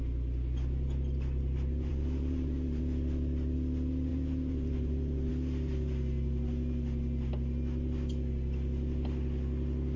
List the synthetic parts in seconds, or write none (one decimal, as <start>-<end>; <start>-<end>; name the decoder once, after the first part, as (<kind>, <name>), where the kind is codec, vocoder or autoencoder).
1.9-2.8 (vocoder, BigVGAN v2); 4.1-5.3